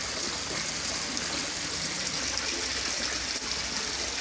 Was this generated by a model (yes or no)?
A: no